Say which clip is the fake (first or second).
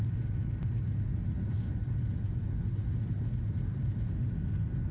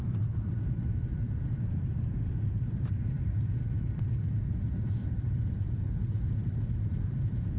second